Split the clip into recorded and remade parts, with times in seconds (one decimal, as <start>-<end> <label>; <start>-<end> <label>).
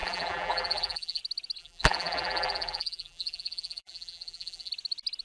0.0-1.2 remade; 1.2-1.6 recorded; 1.6-4.7 remade; 4.7-5.2 recorded